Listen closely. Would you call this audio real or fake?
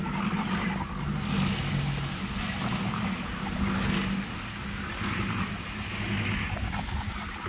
real